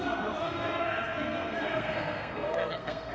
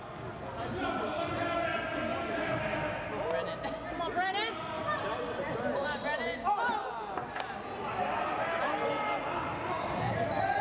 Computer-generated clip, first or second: first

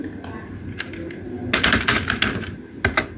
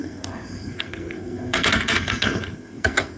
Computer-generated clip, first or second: second